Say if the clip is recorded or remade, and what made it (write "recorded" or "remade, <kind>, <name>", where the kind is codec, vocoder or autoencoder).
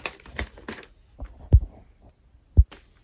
recorded